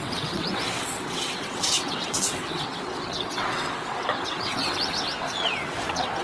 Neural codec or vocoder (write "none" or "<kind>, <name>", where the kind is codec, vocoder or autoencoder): vocoder, WaveNeXt